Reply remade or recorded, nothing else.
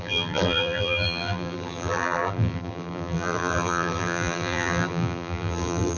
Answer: remade